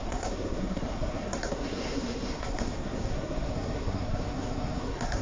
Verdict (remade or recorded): remade